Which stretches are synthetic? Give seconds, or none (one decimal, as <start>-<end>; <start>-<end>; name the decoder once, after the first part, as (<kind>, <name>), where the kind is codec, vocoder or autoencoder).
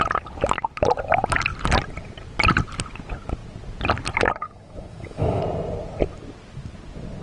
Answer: 4.4-5.4 (autoencoder, DAC-VAE)